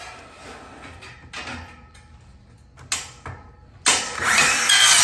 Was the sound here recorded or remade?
recorded